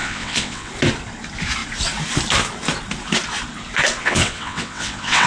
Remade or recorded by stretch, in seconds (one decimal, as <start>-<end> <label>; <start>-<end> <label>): 0.0-0.7 remade; 0.7-4.0 recorded; 4.0-5.3 remade